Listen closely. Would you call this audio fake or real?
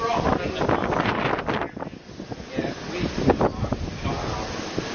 real